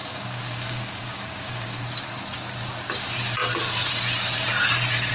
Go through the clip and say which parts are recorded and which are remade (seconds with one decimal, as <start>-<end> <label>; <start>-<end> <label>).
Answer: 0.0-1.8 remade; 1.8-5.1 recorded